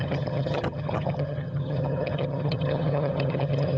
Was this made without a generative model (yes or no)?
no